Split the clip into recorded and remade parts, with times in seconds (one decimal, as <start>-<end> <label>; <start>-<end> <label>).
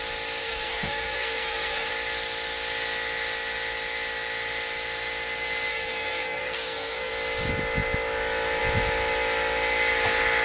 0.0-0.4 recorded; 0.4-1.9 remade; 1.9-5.7 recorded; 5.7-7.1 remade; 7.1-10.4 recorded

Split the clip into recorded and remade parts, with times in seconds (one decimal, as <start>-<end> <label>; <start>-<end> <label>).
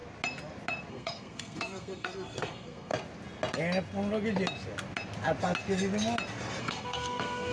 0.0-0.9 recorded; 0.9-2.9 remade; 2.9-6.6 recorded; 6.6-7.5 remade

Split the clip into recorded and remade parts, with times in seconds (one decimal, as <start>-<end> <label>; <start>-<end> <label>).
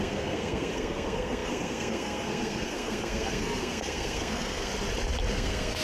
0.0-4.7 remade; 4.7-5.3 recorded; 5.3-5.8 remade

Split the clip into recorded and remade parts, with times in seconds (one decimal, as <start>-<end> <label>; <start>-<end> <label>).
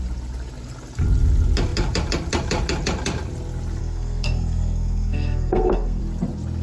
0.0-3.8 recorded; 3.8-6.0 remade; 6.0-6.6 recorded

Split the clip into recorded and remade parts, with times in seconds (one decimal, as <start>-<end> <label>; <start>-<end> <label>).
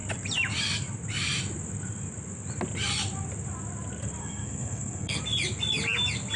0.0-4.2 recorded; 4.2-5.2 remade; 5.2-6.4 recorded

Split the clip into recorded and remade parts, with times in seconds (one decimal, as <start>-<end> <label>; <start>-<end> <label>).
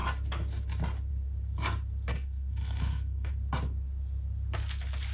0.0-2.1 recorded; 2.1-3.3 remade; 3.3-5.1 recorded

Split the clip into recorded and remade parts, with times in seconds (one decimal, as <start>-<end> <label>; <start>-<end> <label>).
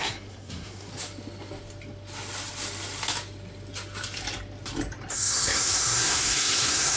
0.0-0.9 remade; 0.9-5.1 recorded; 5.1-7.0 remade